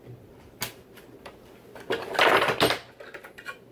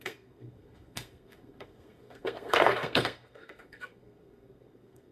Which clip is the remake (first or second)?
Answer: second